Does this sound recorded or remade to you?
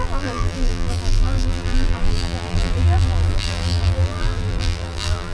remade